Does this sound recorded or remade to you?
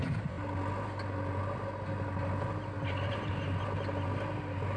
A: recorded